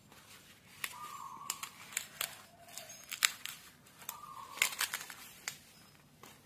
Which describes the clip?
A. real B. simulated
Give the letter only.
A